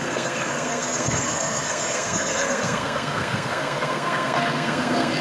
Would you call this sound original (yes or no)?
no